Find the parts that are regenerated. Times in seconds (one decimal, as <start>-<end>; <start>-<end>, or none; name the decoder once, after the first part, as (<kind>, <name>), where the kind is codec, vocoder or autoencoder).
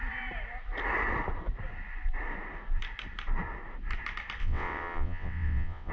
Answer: 4.4-5.9 (vocoder, WaveNeXt)